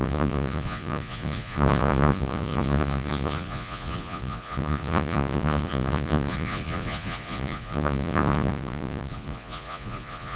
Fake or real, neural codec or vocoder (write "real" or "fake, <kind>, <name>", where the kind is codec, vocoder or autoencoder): fake, vocoder, Vocos